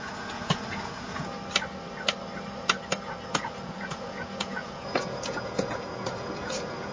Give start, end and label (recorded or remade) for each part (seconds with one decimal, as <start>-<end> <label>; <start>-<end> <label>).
0.0-1.4 remade; 1.4-3.3 recorded; 3.3-6.9 remade